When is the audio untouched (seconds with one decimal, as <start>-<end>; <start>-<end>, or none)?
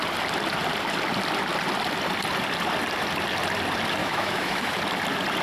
0.0-4.0; 4.8-5.4